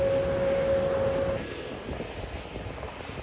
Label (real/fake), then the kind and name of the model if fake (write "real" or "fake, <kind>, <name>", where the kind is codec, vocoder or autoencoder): real